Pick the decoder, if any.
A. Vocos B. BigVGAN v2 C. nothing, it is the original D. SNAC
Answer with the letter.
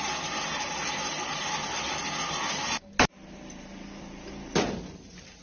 C